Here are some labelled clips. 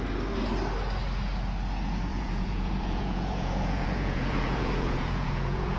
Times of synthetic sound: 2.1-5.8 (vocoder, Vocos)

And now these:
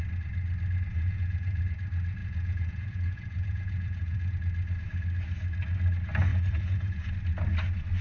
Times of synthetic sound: 0.9-1.6 (vocoder, Vocos); 2.2-4.3; 6.3-7.1

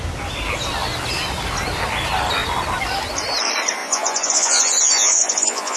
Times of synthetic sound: 3.8-5.8 (vocoder, Vocos)

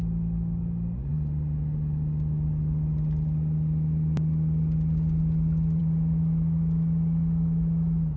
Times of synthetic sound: none

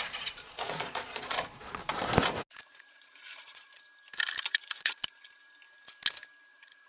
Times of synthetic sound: 0.0-1.9 (vocoder, Vocos); 2.5-3.7; 4.4-5.4; 6.5-6.9